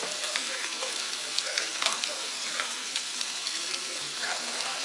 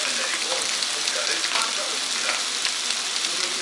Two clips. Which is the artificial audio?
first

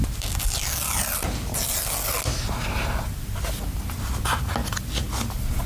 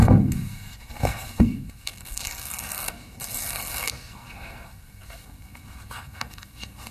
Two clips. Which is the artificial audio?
second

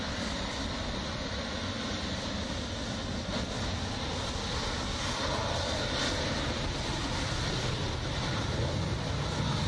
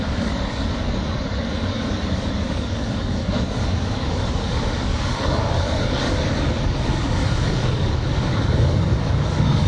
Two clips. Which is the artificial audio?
second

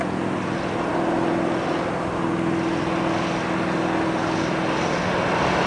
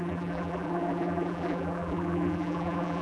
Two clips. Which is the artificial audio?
second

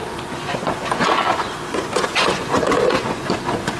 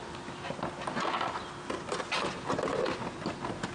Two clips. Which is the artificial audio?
first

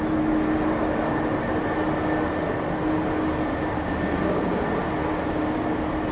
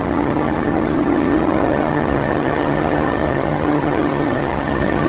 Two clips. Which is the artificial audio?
second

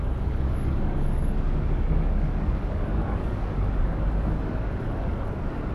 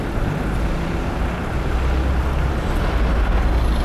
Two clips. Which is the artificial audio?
first